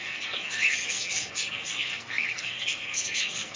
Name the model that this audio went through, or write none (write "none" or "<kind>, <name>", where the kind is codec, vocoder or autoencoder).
codec, SNAC